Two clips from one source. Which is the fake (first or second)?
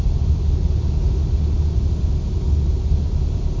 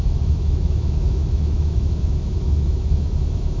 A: second